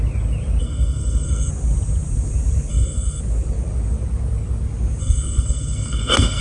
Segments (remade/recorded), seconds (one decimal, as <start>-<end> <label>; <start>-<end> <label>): 0.0-0.6 recorded; 0.6-1.5 remade; 1.5-2.7 recorded; 2.7-3.2 remade; 3.2-5.0 recorded; 5.0-6.4 remade